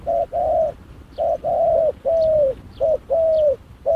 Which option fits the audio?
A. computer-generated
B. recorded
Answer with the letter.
A